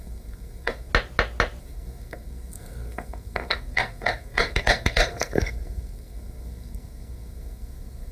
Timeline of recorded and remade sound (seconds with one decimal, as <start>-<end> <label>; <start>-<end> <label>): 0.0-0.9 remade; 0.9-1.6 recorded; 1.6-8.1 remade